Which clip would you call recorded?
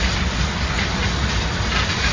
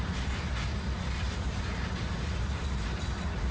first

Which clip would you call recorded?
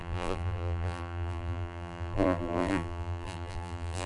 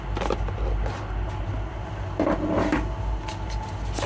second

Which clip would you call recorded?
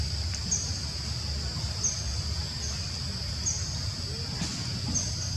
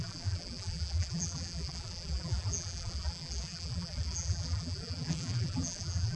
first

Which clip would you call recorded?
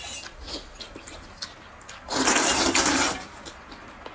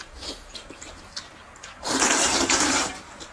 first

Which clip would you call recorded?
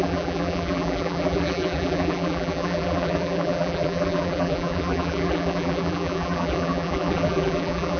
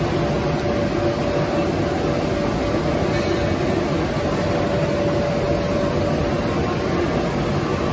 second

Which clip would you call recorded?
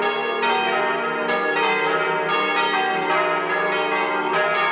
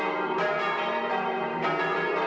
first